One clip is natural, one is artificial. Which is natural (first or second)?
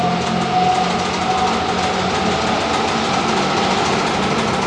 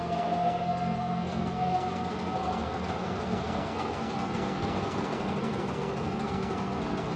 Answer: first